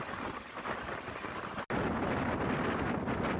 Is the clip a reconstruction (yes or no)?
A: no